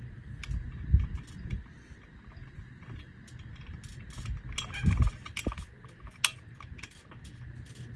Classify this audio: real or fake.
real